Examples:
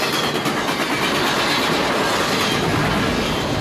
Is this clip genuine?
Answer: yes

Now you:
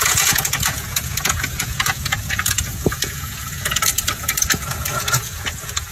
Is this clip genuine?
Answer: no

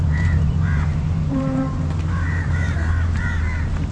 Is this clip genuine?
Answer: no